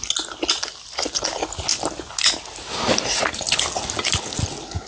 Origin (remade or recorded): recorded